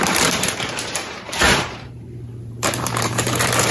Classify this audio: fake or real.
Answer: fake